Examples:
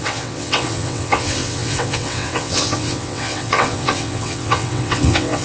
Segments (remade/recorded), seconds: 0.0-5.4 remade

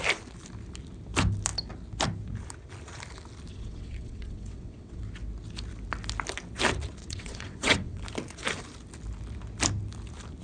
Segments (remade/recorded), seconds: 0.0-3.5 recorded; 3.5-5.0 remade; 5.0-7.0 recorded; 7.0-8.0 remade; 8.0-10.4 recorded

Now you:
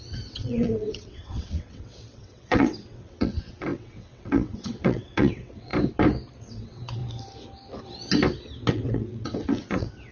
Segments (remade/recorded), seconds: 0.0-5.7 remade; 5.7-6.4 recorded; 6.4-7.0 remade; 7.0-8.7 recorded; 8.7-10.1 remade

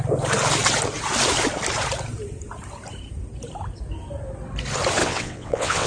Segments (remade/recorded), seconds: 0.0-5.0 recorded; 5.0-5.9 remade

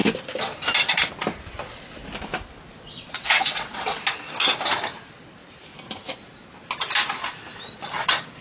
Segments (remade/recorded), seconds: 0.0-2.9 recorded; 2.9-4.0 remade; 4.0-8.4 recorded

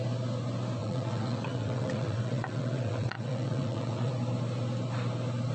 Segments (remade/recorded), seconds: 0.0-0.8 recorded; 0.8-4.1 remade; 4.1-5.5 recorded